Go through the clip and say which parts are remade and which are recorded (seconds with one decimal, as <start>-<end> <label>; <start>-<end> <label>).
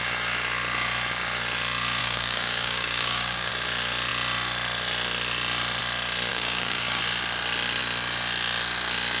0.0-2.0 recorded; 2.0-3.5 remade; 3.5-6.3 recorded; 6.3-7.0 remade; 7.0-9.2 recorded